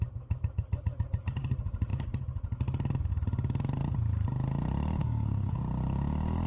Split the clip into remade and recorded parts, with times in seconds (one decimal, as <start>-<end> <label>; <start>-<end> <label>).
0.0-5.0 recorded; 5.0-5.6 remade; 5.6-6.5 recorded

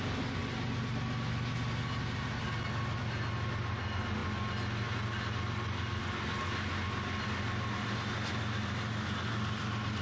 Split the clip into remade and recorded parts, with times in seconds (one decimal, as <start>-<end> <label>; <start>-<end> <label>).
0.0-10.0 recorded